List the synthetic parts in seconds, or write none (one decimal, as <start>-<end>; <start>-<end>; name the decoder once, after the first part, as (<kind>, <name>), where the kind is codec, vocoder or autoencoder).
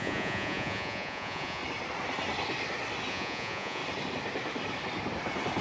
0.0-1.6 (vocoder, Vocos); 3.1-3.8